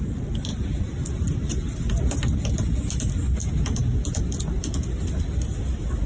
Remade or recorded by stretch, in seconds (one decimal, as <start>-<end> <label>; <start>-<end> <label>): 0.0-6.1 recorded